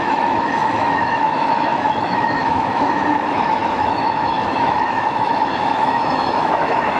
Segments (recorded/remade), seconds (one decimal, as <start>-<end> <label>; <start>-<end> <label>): 0.0-7.0 remade